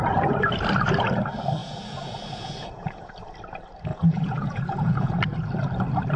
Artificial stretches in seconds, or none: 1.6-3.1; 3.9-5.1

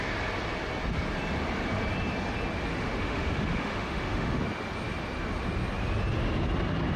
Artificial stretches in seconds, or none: 2.7-4.4

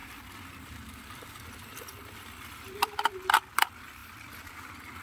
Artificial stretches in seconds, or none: 0.0-3.0; 4.0-4.5

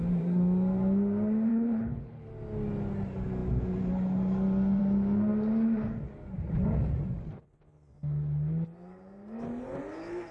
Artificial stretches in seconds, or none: 1.5-2.3